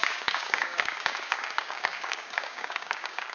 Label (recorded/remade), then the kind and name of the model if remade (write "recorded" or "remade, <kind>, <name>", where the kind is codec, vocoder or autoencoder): remade, codec, DAC